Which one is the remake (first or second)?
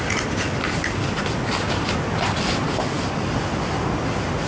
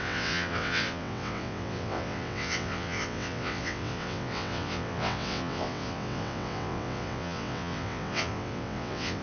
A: second